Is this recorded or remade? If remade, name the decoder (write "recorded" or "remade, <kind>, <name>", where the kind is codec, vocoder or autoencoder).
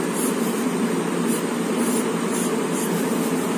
recorded